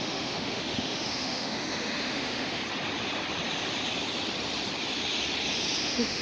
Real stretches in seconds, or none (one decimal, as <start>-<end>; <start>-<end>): 2.6-5.8